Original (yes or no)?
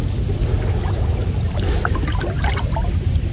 yes